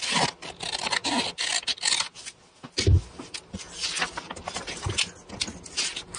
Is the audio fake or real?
real